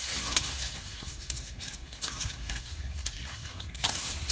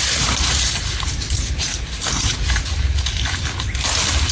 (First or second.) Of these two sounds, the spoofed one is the first